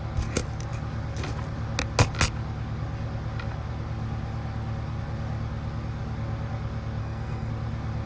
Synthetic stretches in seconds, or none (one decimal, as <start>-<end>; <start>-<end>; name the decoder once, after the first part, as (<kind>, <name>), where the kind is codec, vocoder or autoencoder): 7.0-7.5 (codec, SNAC)